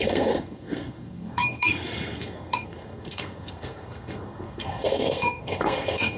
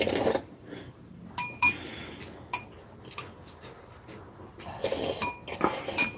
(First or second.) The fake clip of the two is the first